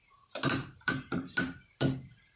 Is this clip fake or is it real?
fake